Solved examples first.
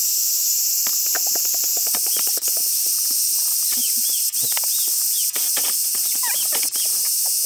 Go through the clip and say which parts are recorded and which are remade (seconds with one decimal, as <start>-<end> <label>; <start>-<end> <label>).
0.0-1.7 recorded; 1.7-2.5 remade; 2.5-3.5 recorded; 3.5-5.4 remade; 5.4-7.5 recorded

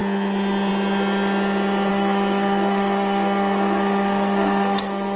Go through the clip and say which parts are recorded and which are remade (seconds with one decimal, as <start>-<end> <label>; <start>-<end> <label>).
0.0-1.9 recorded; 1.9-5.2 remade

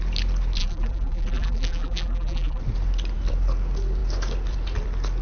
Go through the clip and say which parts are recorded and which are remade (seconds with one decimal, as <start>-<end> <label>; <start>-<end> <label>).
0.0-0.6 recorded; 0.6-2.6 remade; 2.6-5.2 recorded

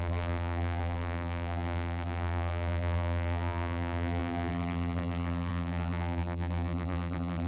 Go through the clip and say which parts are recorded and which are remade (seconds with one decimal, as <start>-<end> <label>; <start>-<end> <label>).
0.0-7.5 remade

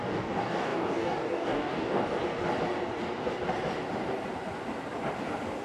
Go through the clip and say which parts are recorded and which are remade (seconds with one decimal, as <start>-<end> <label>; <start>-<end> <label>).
0.0-2.2 remade; 2.2-5.6 recorded

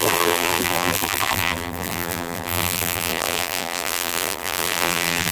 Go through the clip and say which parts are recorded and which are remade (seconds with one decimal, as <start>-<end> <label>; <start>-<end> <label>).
0.0-5.3 remade